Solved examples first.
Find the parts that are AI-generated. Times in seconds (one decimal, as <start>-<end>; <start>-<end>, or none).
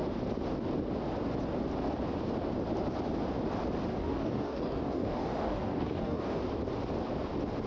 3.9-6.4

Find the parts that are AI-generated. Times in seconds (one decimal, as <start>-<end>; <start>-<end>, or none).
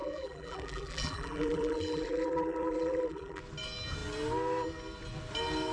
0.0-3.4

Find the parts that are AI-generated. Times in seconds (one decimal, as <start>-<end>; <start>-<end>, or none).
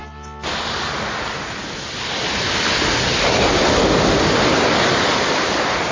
none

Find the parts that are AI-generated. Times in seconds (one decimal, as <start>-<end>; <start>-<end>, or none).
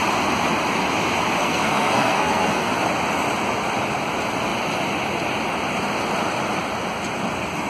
1.4-2.7